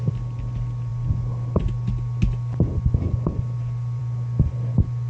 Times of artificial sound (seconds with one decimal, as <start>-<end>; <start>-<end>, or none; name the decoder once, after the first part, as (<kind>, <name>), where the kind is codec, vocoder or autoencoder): none